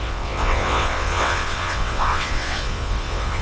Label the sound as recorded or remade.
remade